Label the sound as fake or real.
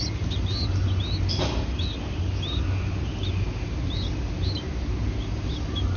real